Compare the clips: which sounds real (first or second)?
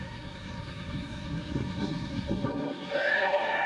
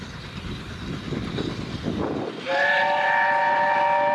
second